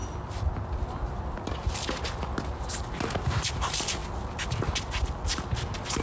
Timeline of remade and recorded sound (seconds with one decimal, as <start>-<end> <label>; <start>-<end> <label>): 0.0-6.0 recorded